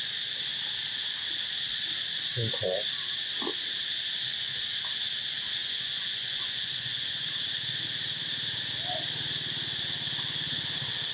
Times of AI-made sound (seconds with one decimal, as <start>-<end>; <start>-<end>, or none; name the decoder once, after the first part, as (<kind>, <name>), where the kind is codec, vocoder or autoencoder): 5.6-7.3 (vocoder, Vocos)